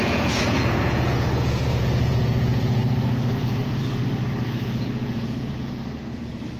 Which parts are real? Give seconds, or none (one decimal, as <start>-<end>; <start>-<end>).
2.8-3.4; 3.8-4.6; 5.8-6.6